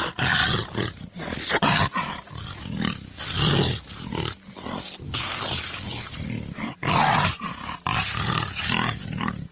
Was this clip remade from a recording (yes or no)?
no